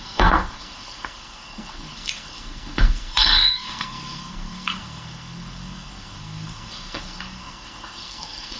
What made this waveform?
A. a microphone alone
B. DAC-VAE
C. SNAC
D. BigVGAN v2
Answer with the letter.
C